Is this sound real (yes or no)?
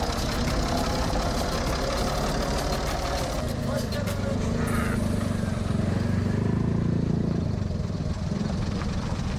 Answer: yes